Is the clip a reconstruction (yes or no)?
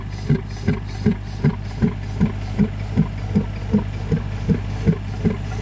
no